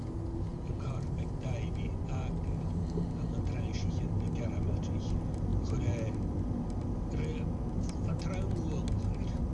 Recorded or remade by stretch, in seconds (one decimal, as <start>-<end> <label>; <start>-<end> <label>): 0.0-0.5 recorded; 0.5-1.0 remade; 1.0-9.5 recorded